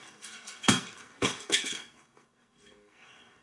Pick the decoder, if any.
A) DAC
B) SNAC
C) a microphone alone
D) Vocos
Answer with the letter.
B